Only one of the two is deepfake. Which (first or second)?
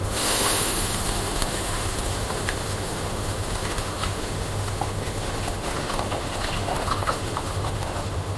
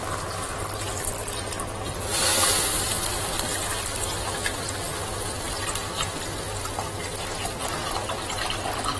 first